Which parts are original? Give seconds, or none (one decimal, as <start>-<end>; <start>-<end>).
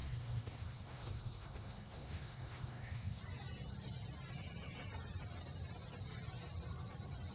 3.2-7.3